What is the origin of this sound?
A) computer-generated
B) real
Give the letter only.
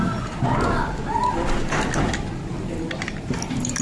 B